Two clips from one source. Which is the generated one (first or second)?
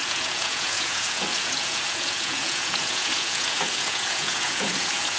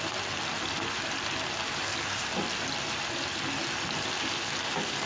first